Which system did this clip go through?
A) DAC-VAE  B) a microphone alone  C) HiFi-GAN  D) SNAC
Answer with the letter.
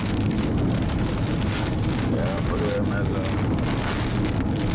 B